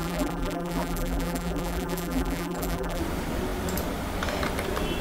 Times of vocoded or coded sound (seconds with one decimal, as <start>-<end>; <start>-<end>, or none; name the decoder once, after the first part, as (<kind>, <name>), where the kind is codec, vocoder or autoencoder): 0.0-3.0 (vocoder, BigVGAN v2)